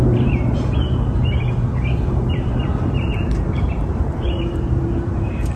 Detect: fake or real fake